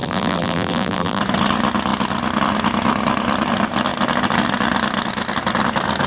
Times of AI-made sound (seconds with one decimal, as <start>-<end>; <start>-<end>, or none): 0.0-1.2